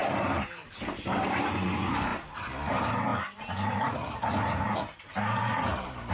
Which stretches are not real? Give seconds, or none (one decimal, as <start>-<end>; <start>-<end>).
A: 0.0-2.1; 2.7-6.1